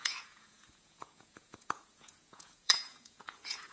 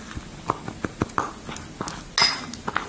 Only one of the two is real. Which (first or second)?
second